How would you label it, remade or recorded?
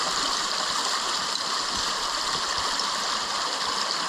recorded